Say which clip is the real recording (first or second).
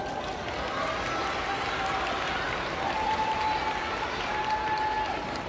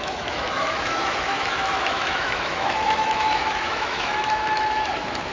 first